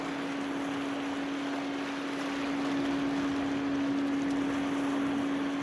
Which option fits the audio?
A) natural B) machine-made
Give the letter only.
A